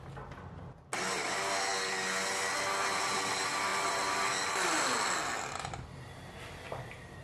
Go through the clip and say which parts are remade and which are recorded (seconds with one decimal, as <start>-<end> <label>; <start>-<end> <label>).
0.0-7.2 recorded